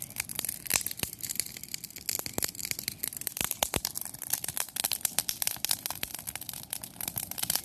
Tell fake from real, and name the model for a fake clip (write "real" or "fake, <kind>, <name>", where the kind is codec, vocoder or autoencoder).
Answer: real